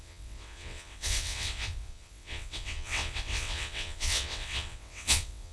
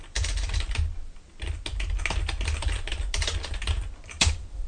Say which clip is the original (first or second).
second